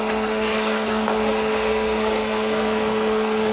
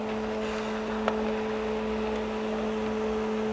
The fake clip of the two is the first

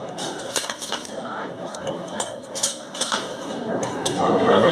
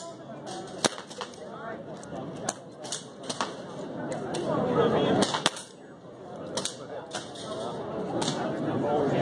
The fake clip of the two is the first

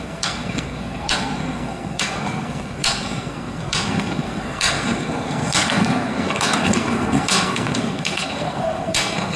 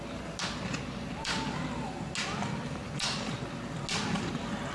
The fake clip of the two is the first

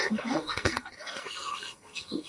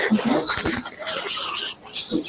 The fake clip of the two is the first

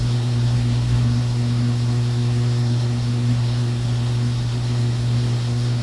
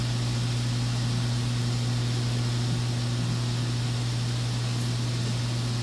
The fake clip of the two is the first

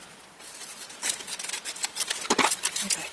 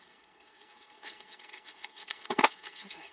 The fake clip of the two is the second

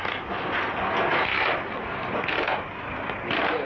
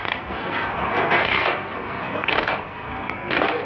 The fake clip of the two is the second